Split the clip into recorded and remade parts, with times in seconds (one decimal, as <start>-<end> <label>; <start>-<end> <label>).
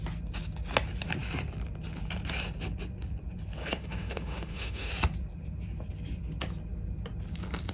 0.0-3.6 recorded; 3.6-4.9 remade; 4.9-7.7 recorded